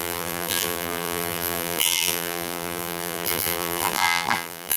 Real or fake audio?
fake